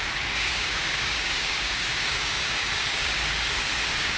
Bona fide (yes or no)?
no